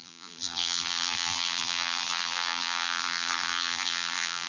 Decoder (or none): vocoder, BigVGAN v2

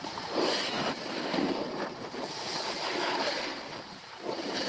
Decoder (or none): vocoder, BigVGAN v2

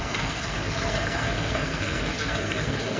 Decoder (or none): codec, SNAC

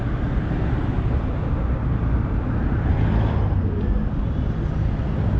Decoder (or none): none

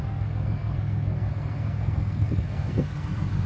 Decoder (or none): codec, SNAC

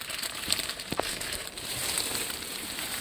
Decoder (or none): vocoder, BigVGAN v2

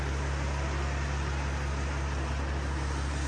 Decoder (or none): none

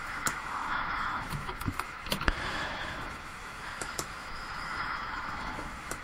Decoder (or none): autoencoder, DAC-VAE